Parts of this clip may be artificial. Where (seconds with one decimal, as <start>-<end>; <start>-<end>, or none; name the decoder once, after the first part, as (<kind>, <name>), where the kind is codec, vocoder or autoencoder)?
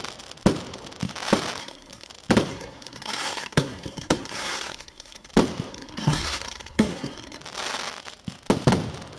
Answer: 1.6-2.1 (codec, SNAC); 2.5-5.3; 5.7-7.4